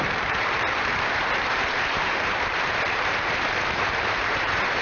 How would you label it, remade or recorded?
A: remade